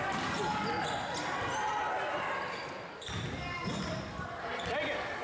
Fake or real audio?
real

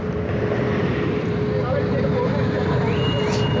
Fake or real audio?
real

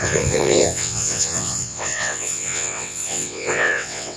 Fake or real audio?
fake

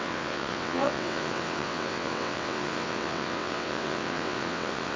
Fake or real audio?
fake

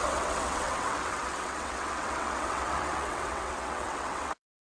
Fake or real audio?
fake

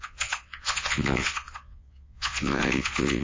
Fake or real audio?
fake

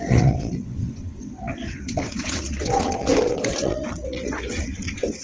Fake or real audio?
fake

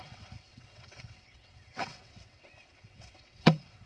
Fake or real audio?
fake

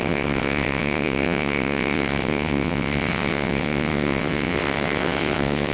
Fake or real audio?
fake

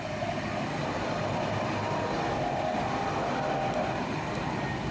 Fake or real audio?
real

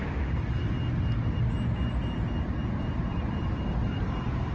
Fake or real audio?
real